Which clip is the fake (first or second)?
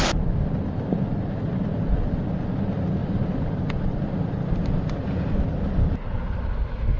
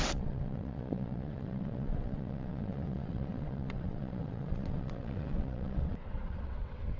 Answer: second